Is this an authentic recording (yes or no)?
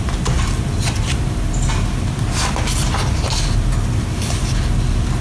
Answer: yes